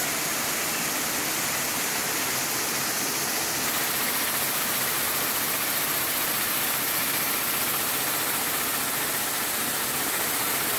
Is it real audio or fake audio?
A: real